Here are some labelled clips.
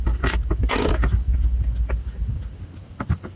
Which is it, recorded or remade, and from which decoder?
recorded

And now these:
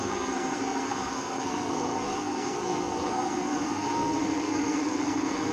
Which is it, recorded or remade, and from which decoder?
remade, codec, SNAC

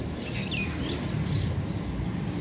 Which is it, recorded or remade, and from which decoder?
recorded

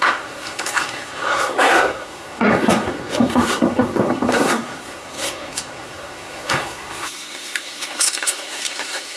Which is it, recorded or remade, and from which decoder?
remade, codec, SNAC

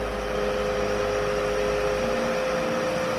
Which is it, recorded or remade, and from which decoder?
recorded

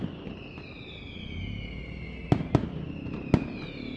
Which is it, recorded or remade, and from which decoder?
recorded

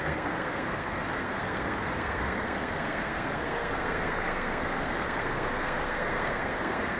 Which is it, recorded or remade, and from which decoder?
remade, codec, SNAC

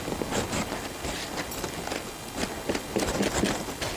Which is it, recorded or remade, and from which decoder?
recorded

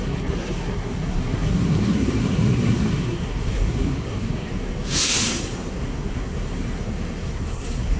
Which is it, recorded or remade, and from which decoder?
remade, codec, SNAC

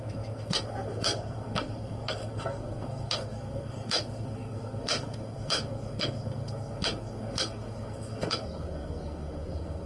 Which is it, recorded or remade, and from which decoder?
remade, codec, SNAC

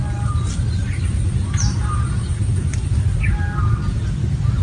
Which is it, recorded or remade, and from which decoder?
recorded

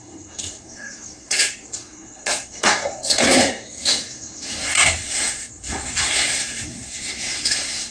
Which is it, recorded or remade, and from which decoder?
remade, codec, SNAC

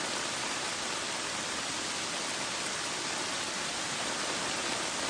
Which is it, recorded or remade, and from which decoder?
recorded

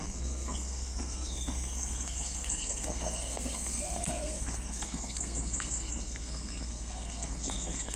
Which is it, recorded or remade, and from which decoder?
remade, codec, SNAC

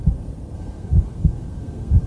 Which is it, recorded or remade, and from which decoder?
remade, codec, SNAC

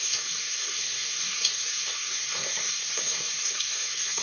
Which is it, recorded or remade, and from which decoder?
remade, codec, SNAC